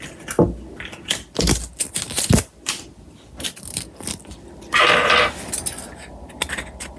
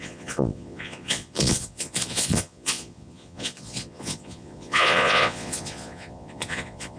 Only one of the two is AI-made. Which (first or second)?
second